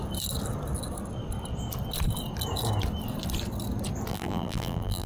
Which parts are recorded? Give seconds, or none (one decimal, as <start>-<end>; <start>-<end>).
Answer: 0.0-4.1